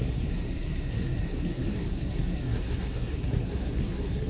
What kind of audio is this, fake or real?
fake